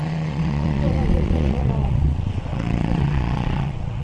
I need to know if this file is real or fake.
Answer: fake